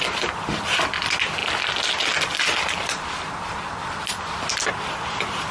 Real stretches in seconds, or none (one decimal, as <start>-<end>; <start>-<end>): 0.0-5.5